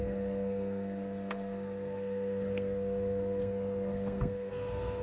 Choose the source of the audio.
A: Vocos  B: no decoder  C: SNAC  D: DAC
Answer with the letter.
C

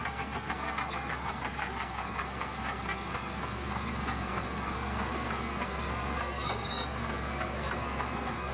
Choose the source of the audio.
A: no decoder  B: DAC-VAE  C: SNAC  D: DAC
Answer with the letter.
C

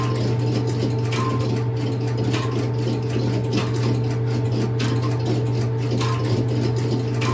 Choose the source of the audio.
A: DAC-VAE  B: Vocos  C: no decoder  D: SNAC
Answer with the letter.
C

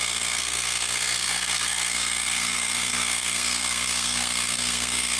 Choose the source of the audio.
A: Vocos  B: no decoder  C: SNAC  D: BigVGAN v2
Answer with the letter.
C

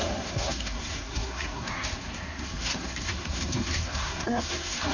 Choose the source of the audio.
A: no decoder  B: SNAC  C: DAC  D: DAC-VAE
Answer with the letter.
B